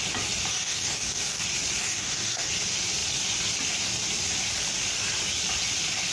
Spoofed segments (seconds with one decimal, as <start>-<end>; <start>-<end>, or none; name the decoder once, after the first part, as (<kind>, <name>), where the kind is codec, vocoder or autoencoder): 0.5-1.4 (codec, DAC); 1.8-2.5

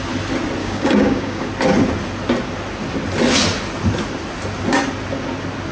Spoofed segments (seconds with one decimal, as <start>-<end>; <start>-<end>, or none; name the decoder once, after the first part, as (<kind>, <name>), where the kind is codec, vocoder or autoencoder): 0.6-1.5 (codec, DAC)

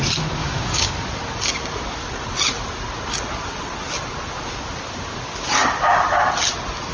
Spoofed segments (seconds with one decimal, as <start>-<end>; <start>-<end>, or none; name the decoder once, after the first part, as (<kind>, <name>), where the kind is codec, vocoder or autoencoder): 0.4-0.9 (codec, DAC)

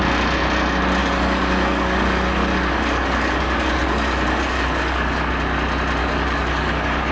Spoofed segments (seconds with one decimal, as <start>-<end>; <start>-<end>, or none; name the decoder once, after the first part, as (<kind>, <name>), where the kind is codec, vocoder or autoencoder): 1.0-5.3 (codec, DAC); 6.0-7.1

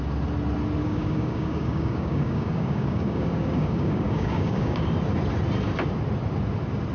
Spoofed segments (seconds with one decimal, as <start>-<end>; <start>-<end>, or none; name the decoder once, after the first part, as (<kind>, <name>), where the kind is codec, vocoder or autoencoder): 0.8-4.9 (codec, DAC)

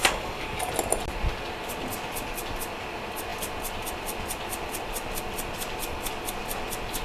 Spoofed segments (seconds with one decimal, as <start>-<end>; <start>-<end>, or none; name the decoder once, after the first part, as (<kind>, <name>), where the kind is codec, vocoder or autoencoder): 0.0-0.7 (codec, DAC)

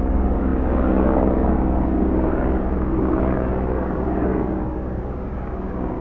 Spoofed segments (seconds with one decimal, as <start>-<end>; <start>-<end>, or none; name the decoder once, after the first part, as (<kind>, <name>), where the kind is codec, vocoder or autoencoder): 0.0-6.0 (codec, DAC)